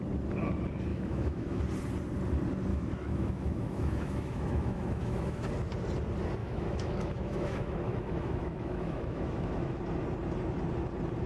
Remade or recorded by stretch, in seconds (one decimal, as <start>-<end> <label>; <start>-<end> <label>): 0.0-0.9 recorded; 0.9-1.6 remade; 1.6-2.7 recorded; 2.7-5.5 remade; 5.5-6.4 recorded; 6.4-9.8 remade; 9.8-11.3 recorded